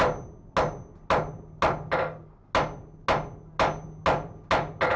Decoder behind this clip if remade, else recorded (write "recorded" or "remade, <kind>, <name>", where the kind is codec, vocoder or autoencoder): recorded